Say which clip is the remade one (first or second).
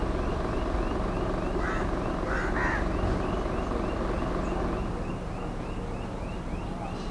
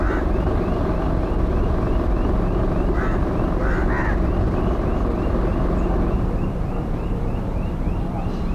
second